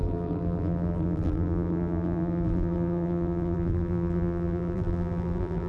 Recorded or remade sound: remade